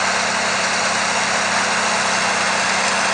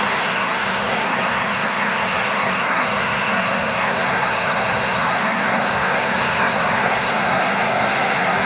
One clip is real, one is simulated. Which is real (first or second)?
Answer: first